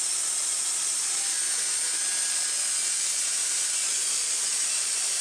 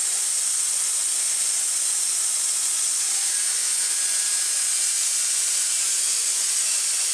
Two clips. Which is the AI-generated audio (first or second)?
second